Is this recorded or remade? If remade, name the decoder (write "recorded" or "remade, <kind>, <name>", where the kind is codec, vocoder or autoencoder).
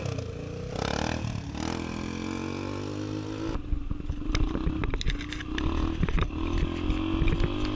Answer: recorded